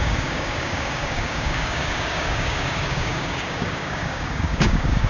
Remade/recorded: remade